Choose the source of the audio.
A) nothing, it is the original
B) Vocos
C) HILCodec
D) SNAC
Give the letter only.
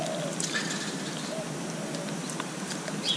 A